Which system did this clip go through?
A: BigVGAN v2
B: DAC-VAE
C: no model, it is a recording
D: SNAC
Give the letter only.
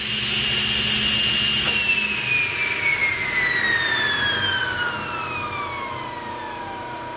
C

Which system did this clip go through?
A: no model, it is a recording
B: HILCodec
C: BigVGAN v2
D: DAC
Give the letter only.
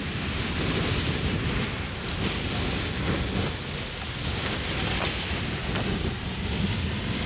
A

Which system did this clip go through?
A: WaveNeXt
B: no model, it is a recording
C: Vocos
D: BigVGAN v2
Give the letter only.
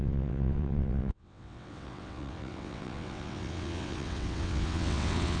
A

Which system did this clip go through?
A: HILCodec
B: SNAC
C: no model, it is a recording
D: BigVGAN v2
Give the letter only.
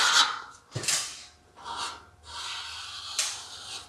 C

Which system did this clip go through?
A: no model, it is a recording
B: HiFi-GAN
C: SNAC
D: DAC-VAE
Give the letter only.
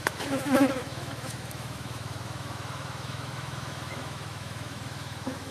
D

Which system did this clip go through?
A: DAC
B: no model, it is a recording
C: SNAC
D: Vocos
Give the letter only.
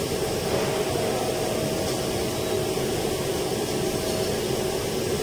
B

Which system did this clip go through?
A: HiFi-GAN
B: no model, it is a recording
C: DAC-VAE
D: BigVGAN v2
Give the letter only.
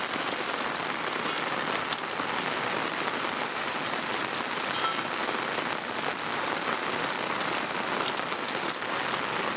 B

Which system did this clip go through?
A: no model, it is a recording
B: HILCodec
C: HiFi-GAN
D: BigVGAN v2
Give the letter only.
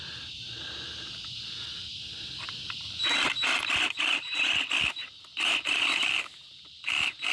D